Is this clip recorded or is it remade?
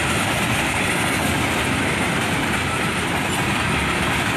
recorded